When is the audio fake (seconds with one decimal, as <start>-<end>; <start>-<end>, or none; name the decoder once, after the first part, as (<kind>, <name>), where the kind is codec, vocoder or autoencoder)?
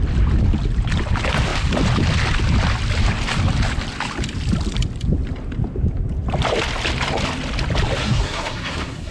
8.0-9.1 (codec, SNAC)